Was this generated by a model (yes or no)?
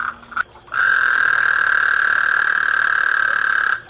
no